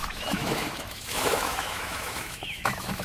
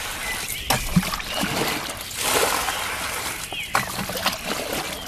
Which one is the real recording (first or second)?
second